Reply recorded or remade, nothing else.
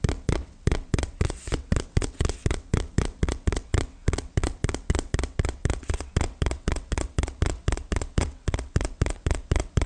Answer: remade